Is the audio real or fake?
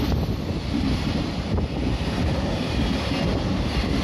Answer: real